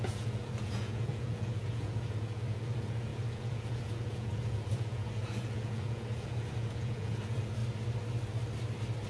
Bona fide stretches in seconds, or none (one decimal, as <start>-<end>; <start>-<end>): 7.6-9.1